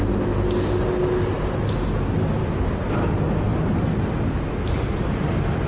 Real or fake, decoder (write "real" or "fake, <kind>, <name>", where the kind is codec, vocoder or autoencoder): real